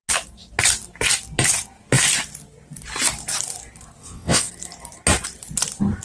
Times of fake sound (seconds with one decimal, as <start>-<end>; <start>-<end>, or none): 4.0-4.5